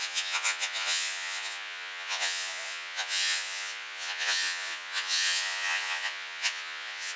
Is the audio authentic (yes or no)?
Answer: no